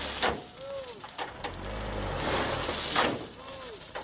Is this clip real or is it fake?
real